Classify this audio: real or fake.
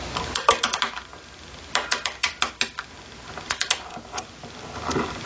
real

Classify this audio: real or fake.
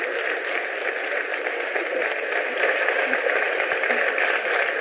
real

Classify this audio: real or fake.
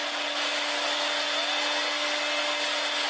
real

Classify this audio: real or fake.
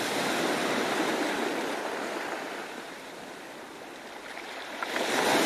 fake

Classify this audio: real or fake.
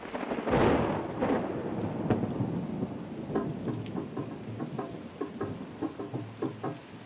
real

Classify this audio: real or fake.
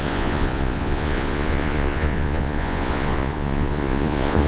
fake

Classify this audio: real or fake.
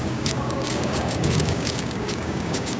fake